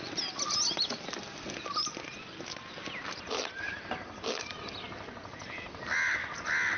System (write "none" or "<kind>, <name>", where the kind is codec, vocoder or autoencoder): none